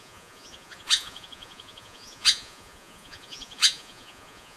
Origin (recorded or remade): remade